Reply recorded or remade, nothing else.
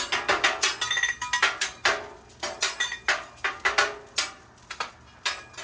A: recorded